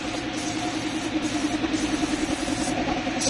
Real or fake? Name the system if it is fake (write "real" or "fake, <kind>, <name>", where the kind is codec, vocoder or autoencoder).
fake, vocoder, BigVGAN v2